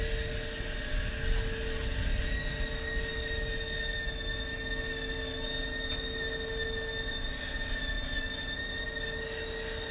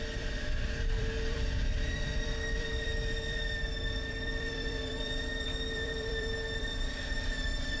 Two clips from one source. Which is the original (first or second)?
first